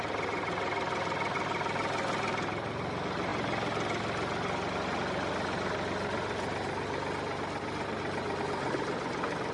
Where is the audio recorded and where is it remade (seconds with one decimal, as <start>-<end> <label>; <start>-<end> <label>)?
0.0-9.5 recorded